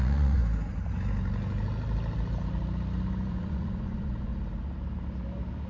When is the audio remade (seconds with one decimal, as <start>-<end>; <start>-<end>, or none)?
0.0-0.4; 3.3-4.3